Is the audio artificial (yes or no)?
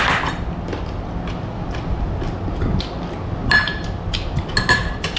no